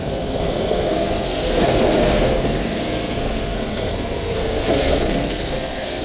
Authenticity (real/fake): fake